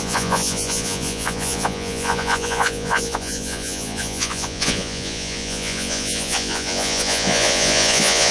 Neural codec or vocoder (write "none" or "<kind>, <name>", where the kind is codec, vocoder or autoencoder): vocoder, Vocos